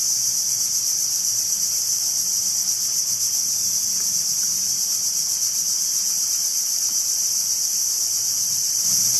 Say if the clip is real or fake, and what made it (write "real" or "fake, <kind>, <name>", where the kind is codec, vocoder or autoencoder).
fake, vocoder, BigVGAN v2